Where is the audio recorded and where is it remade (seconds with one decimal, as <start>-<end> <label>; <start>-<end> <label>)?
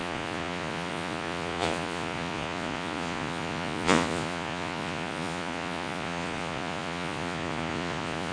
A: 0.0-8.3 remade